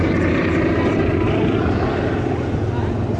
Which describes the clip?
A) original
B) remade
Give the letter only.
A